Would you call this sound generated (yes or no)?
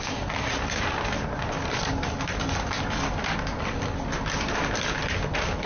no